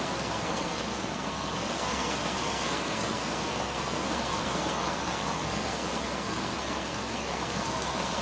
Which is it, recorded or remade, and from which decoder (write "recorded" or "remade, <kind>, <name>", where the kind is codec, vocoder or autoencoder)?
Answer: remade, codec, SNAC